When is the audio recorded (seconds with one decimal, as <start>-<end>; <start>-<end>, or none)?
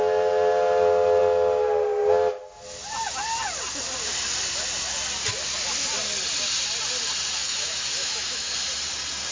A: 0.0-7.4; 8.5-9.3